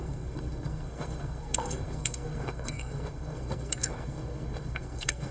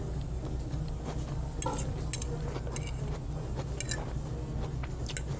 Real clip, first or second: second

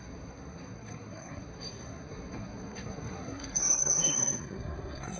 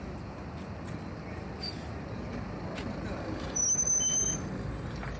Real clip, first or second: second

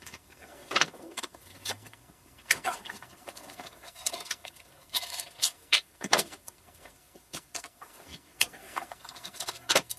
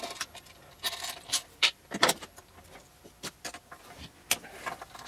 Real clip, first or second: second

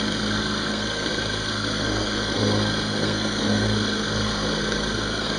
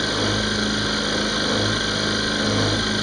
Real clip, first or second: second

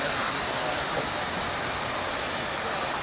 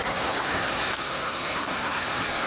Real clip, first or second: first